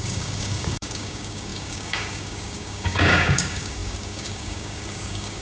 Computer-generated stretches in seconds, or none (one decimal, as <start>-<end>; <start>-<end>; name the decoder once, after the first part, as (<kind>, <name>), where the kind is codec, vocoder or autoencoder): 0.0-5.4 (codec, DAC)